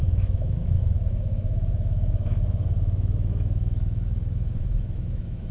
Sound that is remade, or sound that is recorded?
remade